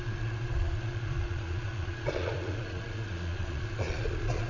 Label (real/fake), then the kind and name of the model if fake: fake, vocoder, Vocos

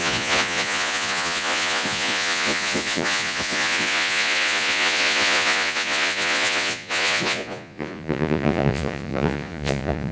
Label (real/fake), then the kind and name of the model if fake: fake, vocoder, Vocos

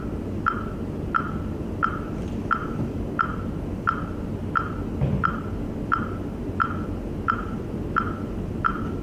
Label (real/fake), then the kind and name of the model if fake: real